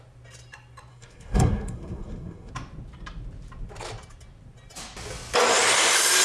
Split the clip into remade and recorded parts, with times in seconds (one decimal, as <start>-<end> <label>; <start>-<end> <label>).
0.0-0.9 recorded; 0.9-2.5 remade; 2.5-6.2 recorded